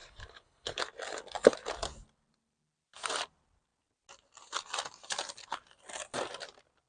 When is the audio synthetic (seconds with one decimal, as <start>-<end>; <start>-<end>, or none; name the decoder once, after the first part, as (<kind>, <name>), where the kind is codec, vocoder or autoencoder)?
0.0-0.8 (codec, HILCodec)